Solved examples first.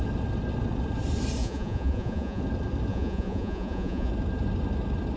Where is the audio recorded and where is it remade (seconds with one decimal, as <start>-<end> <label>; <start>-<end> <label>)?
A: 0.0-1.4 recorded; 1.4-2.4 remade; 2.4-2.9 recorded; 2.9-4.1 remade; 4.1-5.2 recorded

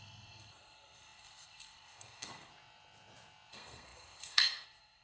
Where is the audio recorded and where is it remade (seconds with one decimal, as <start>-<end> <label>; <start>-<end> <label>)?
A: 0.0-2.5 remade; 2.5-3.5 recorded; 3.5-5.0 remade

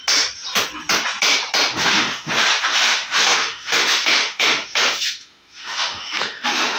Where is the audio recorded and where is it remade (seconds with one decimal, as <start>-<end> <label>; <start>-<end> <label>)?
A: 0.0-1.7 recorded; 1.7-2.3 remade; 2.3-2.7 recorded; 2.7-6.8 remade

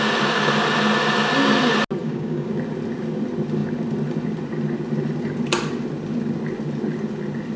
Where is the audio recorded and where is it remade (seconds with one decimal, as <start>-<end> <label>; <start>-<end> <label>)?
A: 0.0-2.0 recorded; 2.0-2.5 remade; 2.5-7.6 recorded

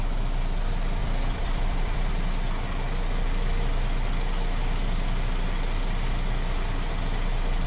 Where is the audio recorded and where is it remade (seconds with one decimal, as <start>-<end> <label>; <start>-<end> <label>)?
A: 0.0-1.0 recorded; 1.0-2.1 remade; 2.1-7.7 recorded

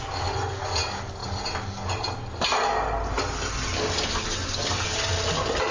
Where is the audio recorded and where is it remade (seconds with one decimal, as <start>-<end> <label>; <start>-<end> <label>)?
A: 0.0-5.7 recorded